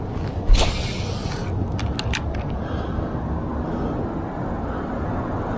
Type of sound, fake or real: real